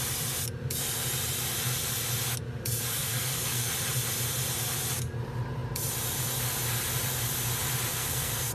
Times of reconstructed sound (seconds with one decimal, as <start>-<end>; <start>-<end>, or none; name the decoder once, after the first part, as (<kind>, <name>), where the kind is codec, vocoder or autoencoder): 2.9-3.7 (codec, SNAC); 7.9-8.5